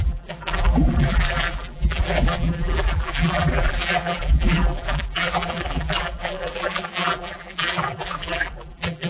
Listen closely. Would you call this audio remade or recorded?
remade